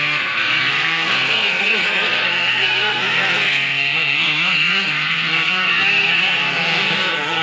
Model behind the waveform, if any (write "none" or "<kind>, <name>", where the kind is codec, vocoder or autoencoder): codec, SNAC